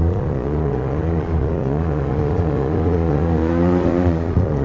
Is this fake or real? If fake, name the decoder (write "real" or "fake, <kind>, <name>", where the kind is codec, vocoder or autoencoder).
fake, vocoder, Vocos